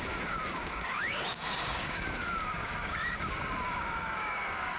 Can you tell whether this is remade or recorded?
remade